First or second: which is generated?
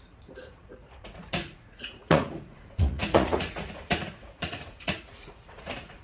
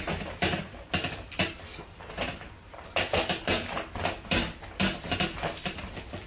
first